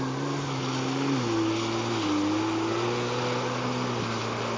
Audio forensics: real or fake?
real